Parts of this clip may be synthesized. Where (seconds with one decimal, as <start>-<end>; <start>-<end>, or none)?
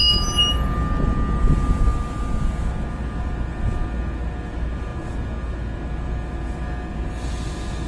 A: none